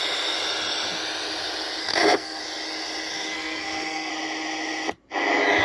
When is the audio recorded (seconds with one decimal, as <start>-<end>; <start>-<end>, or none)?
0.0-1.8; 2.4-3.1; 4.1-5.6